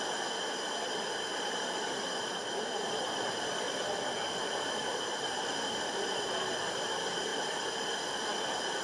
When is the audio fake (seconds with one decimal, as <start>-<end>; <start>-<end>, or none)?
1.3-2.0; 4.8-5.5